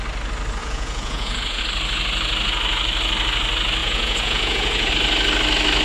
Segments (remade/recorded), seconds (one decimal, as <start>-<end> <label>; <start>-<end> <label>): 0.0-0.6 recorded; 0.6-1.6 remade; 1.6-3.8 recorded; 3.8-4.9 remade; 4.9-5.8 recorded